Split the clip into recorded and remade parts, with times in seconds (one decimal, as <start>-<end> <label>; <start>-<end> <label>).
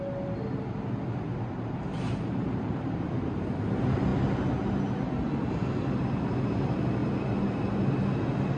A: 0.0-1.9 recorded; 1.9-3.6 remade; 3.6-8.6 recorded